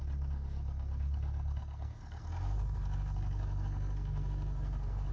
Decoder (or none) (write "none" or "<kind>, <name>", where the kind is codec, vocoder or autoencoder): codec, SNAC